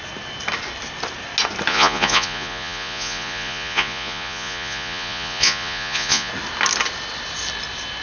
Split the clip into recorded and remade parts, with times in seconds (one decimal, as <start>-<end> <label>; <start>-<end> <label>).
0.0-1.7 recorded; 1.7-6.3 remade; 6.3-8.0 recorded